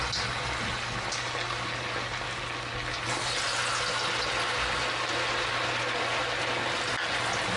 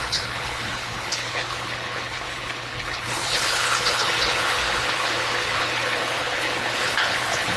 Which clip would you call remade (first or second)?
second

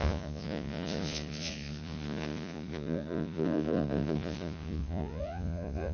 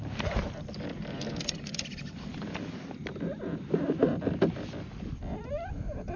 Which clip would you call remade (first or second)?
first